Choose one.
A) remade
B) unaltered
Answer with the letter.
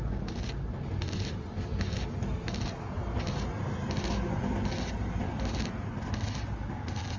B